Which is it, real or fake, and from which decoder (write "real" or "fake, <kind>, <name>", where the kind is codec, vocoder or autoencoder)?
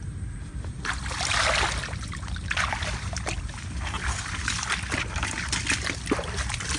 real